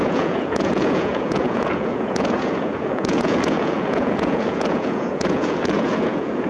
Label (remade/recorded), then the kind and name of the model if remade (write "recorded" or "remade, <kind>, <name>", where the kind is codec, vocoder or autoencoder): remade, vocoder, Vocos